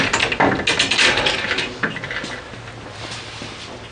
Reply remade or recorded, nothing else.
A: recorded